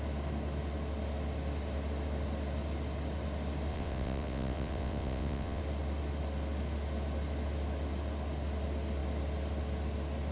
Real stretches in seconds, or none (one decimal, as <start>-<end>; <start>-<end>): 0.0-3.7; 5.6-10.3